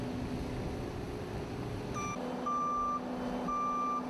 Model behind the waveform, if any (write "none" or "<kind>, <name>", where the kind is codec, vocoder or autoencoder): none